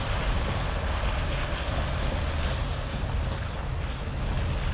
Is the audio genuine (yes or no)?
yes